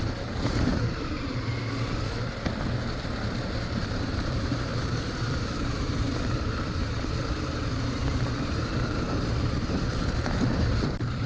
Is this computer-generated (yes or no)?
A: yes